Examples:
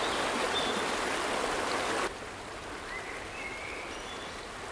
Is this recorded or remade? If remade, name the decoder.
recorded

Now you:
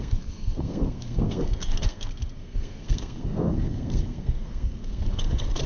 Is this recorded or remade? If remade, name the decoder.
remade, codec, SNAC